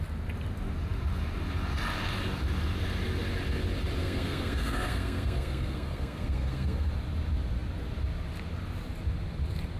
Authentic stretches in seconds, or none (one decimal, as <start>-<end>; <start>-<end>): 0.0-4.0; 6.9-9.8